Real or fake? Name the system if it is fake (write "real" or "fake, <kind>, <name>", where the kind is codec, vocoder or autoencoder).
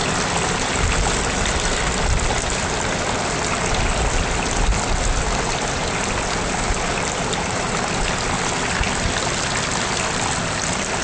real